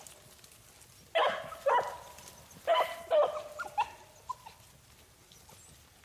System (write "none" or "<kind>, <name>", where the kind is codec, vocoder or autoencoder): none